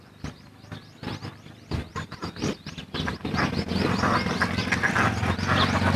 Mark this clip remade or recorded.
recorded